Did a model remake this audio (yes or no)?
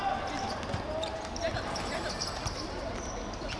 no